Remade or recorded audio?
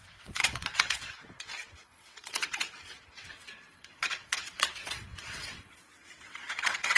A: remade